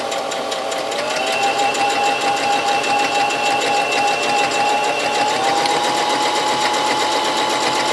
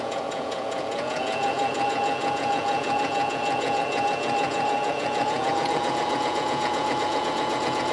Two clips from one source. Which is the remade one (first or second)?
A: second